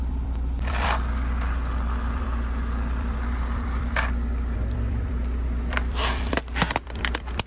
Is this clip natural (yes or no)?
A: no